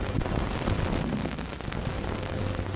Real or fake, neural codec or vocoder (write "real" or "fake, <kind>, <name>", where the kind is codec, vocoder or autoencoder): real